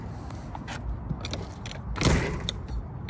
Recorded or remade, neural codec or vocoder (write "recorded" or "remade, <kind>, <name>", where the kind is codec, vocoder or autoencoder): recorded